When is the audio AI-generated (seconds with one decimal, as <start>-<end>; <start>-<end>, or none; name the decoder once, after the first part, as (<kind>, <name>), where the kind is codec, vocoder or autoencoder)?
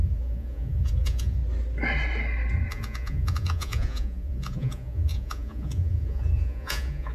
0.0-1.4 (vocoder, Vocos); 2.7-7.1